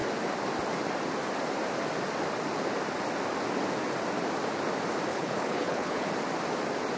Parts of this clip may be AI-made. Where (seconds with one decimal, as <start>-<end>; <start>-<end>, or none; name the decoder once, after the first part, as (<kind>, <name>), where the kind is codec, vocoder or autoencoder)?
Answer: 5.1-6.1 (codec, HILCodec)